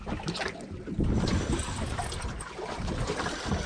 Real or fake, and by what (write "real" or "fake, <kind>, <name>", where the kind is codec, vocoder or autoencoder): real